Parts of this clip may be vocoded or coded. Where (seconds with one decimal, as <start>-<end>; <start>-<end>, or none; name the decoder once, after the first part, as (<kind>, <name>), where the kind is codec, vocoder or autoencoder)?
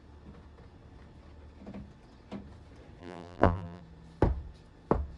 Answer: 3.0-3.8 (vocoder, BigVGAN v2)